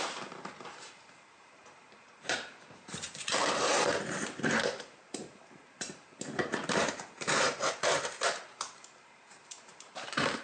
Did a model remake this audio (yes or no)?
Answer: yes